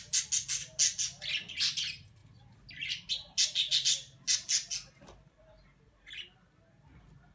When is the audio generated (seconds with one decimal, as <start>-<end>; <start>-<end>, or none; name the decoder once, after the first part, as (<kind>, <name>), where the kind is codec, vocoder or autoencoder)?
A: none